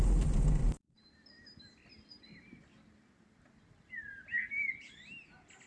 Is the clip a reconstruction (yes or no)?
no